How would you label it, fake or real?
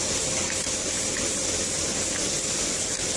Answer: real